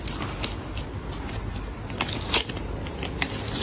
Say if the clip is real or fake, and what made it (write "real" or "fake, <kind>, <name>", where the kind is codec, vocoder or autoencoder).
real